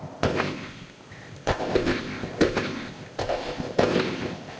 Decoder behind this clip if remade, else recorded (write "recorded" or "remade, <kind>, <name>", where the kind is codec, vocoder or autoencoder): remade, codec, ZipCodec